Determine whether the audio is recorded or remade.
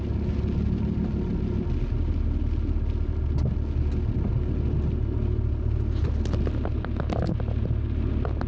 recorded